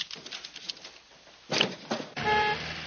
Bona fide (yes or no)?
yes